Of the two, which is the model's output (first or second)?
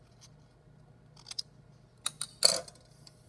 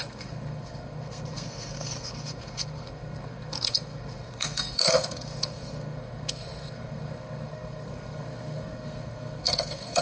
second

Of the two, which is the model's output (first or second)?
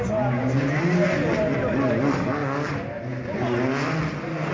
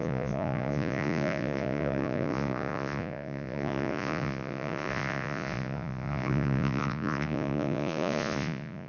second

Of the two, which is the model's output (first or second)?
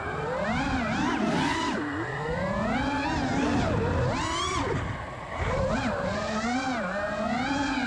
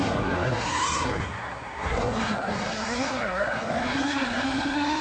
second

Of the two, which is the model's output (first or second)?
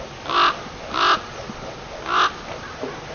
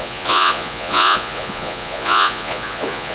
second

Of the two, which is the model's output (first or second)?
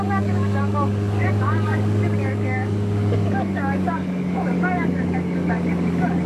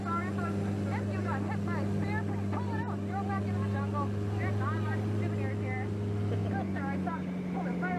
first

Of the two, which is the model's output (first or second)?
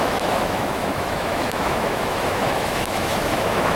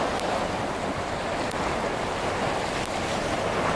first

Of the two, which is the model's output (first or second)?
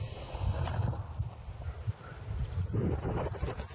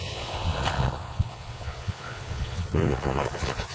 second